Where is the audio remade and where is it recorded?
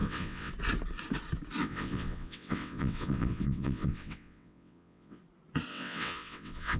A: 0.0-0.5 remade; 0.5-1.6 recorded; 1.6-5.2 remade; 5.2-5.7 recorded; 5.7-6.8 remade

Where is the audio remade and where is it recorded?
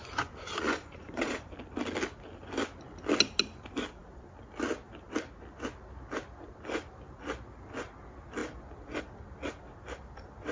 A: 0.0-1.5 remade; 1.5-10.5 recorded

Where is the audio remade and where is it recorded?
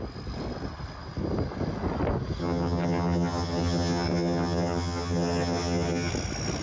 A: 0.0-2.4 recorded; 2.4-6.1 remade; 6.1-6.6 recorded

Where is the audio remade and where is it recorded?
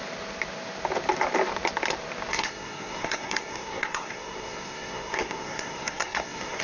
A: 0.0-2.3 recorded; 2.3-6.6 remade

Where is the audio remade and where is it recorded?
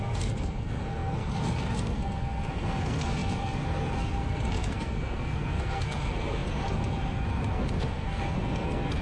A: 0.0-9.0 remade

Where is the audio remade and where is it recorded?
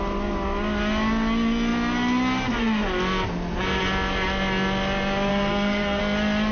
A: 0.0-5.3 recorded; 5.3-6.0 remade; 6.0-6.5 recorded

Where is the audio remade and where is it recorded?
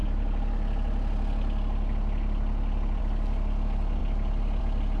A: 0.0-5.0 recorded